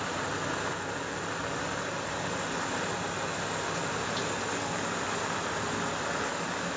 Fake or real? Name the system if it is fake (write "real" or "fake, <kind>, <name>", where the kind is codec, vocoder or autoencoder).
real